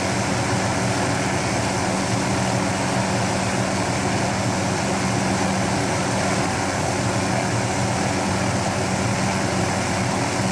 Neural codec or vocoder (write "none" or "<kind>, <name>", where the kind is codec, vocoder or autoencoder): none